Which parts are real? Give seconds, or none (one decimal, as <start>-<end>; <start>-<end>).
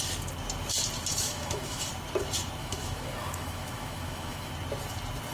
0.0-1.1; 1.9-2.6; 4.5-5.3